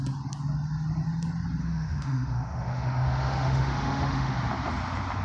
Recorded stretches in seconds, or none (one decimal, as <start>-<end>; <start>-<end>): 0.0-1.6; 4.3-5.2